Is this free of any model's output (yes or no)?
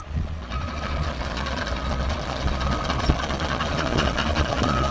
no